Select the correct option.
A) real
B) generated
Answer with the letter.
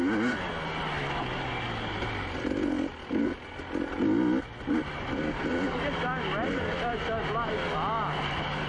A